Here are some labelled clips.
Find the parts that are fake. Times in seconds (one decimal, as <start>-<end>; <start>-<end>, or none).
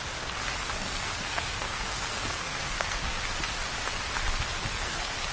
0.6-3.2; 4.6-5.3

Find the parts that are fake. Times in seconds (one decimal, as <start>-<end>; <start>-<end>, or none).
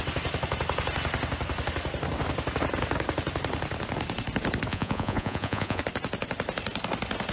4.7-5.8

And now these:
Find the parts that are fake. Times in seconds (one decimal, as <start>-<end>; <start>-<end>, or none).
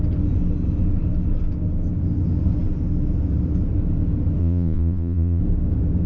4.4-5.4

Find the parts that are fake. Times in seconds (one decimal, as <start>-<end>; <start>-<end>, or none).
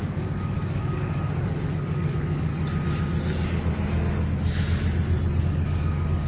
0.0-2.5; 5.4-6.3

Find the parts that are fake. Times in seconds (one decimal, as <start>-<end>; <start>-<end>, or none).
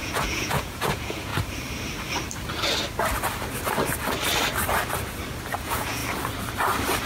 0.0-1.3; 5.6-6.0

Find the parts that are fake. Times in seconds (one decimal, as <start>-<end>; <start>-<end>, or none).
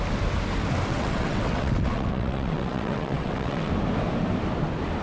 0.9-3.7